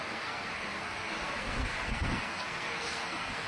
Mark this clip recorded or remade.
remade